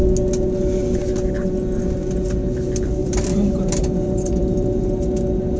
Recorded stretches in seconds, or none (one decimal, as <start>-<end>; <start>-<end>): 0.0-3.0; 4.8-5.6